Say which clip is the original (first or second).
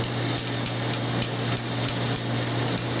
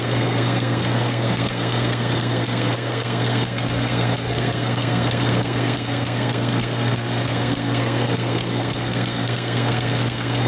first